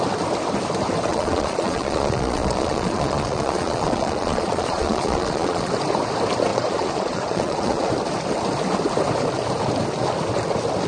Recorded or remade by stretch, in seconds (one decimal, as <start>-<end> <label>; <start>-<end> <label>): 0.0-1.1 recorded; 1.1-5.7 remade; 5.7-6.5 recorded; 6.5-7.9 remade; 7.9-10.9 recorded